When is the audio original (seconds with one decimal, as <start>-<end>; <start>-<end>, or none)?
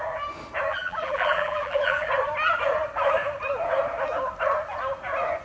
0.0-0.7; 2.1-5.4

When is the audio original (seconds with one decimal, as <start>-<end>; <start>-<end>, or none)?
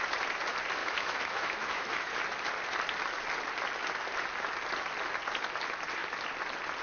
0.0-0.8; 2.2-6.8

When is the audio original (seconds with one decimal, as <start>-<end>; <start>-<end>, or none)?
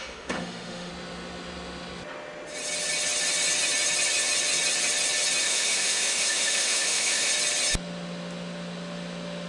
0.9-5.4; 7.3-9.5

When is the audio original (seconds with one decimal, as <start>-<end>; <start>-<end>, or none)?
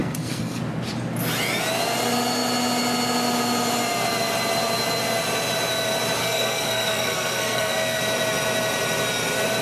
0.6-6.2; 8.0-9.6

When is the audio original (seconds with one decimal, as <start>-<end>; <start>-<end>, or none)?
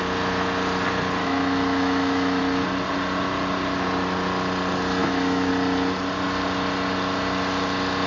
0.0-1.2; 2.4-5.0; 5.5-8.1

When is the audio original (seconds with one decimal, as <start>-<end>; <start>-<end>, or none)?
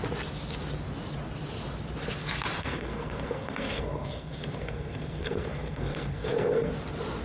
0.0-2.6; 6.7-7.2